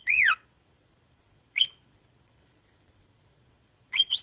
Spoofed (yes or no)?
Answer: yes